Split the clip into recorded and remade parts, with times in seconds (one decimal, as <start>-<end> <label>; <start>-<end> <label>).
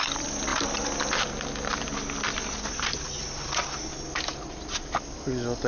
0.0-5.7 recorded